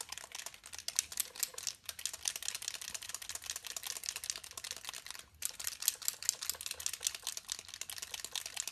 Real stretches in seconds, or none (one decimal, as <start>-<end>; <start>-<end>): 0.0-8.7